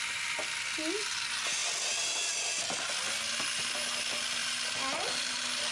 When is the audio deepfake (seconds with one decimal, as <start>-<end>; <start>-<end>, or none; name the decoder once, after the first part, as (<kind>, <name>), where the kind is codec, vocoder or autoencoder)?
none